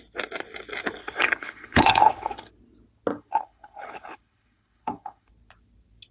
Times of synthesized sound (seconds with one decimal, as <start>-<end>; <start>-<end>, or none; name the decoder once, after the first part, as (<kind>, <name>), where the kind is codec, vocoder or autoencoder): 1.0-2.5 (codec, HILCodec); 3.1-5.3